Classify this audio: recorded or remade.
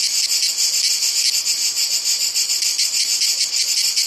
recorded